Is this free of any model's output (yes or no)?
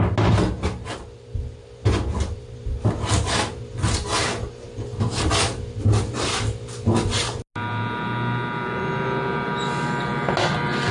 yes